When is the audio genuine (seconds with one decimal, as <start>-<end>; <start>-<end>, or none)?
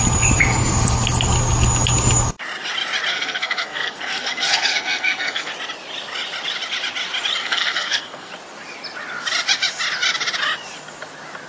0.0-3.1; 5.5-7.4; 8.3-11.5